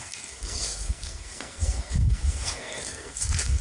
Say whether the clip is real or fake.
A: fake